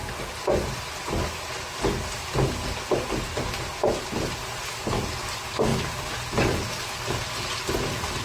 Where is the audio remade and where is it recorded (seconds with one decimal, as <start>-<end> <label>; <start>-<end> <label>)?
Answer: 0.0-8.2 recorded